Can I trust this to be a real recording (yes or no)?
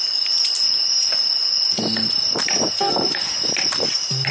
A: yes